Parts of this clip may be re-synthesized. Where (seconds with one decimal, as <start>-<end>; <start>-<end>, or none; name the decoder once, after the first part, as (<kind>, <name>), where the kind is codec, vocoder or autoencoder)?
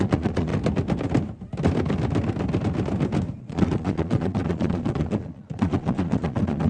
0.0-0.5 (vocoder, Vocos); 3.4-6.7